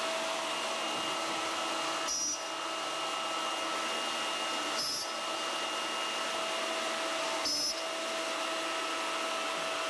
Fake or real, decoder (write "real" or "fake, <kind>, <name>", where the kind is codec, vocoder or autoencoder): real